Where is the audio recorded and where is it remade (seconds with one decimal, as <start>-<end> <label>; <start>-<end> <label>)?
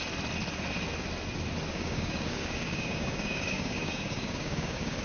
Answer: 0.0-1.7 recorded; 1.7-5.0 remade